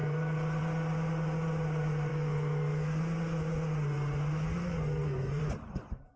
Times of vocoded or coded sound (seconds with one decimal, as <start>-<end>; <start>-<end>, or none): 2.1-3.0; 4.6-5.4